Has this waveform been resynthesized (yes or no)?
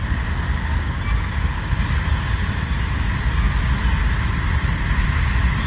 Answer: no